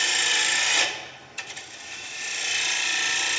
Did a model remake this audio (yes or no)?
no